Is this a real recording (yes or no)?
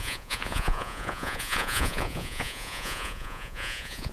no